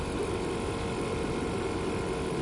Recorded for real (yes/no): yes